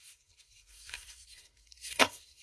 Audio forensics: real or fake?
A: fake